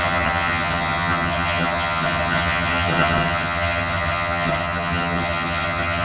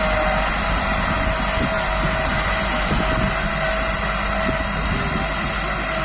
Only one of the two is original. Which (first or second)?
second